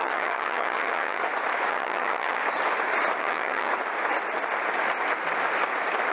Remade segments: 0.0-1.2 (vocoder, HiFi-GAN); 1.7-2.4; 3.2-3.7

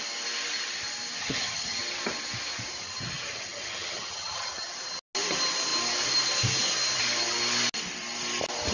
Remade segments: 1.2-1.8 (vocoder, HiFi-GAN); 2.8-4.7

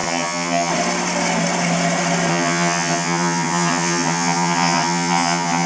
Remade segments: 0.0-0.7 (vocoder, HiFi-GAN); 2.3-5.7

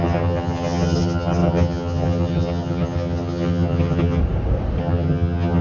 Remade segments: 0.0-4.2 (vocoder, HiFi-GAN); 4.8-5.6

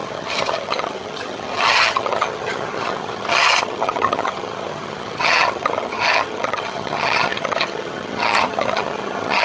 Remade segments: 0.0-9.4 (vocoder, HiFi-GAN)

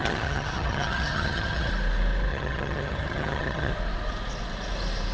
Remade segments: 0.0-1.7 (vocoder, HiFi-GAN); 2.3-3.7

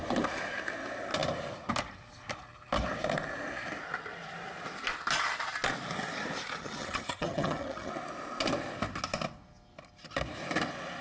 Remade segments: 6.6-7.9 (vocoder, HiFi-GAN)